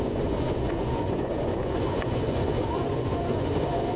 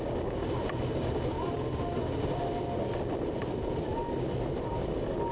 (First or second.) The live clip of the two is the second